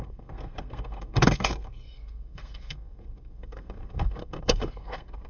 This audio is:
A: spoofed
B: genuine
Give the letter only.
A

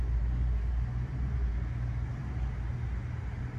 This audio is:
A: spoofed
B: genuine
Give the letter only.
B